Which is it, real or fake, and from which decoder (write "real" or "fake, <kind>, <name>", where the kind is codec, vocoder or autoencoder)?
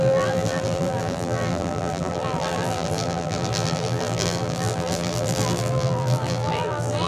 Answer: fake, vocoder, BigVGAN v2